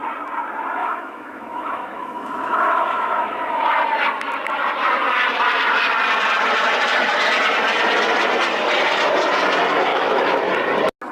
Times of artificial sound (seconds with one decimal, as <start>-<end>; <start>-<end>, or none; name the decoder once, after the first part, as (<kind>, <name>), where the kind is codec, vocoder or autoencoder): 0.8-3.6 (autoencoder, DAC-VAE); 9.9-10.5